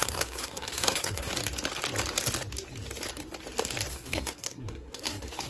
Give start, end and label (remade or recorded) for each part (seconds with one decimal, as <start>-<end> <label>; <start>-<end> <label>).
0.0-1.3 remade; 1.3-3.9 recorded; 3.9-5.5 remade